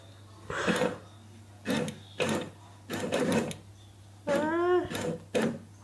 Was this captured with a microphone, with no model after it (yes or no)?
yes